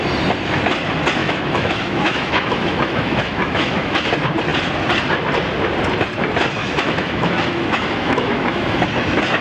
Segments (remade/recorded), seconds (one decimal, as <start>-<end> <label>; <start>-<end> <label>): 0.0-1.2 recorded; 1.2-4.1 remade; 4.1-6.6 recorded; 6.6-8.8 remade; 8.8-9.4 recorded